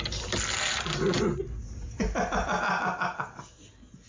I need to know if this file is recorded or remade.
recorded